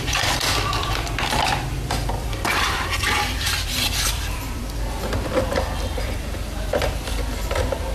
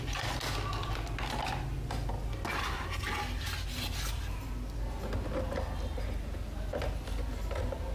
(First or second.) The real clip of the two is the second